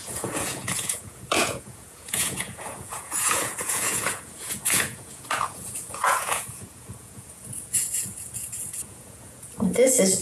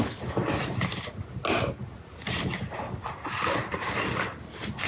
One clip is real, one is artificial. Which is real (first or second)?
second